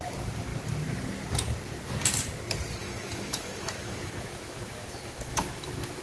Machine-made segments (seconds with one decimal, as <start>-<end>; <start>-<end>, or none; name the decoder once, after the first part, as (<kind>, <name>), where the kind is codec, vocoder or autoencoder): 2.8-6.0 (autoencoder, DAC-VAE)